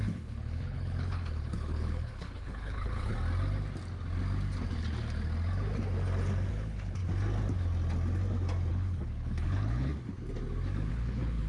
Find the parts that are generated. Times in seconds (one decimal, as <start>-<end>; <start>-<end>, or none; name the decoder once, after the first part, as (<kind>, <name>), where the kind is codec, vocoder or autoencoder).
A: 0.0-3.1 (codec, HILCodec); 6.5-7.0; 8.7-9.9; 10.9-11.5